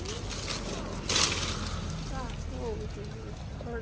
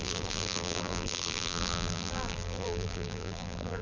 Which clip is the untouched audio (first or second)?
first